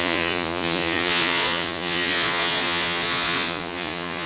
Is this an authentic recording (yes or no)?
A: no